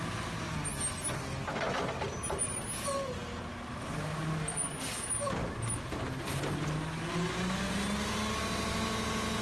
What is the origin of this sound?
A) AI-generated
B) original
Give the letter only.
B